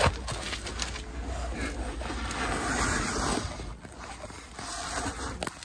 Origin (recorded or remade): recorded